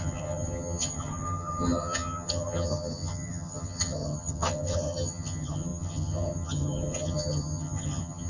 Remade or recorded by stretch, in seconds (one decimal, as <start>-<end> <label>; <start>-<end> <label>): 0.0-8.3 remade